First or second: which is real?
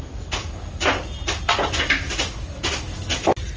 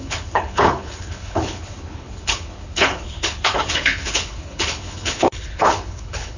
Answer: first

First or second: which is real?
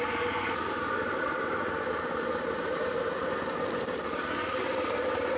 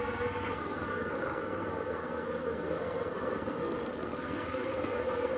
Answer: first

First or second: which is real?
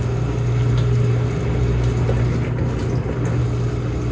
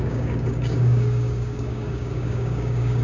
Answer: first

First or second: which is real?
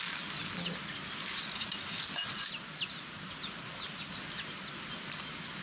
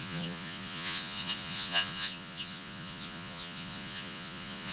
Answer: first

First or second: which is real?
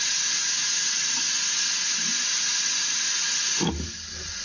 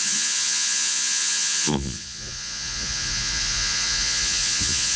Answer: first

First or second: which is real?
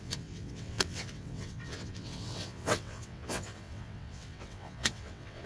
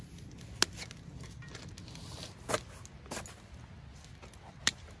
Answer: second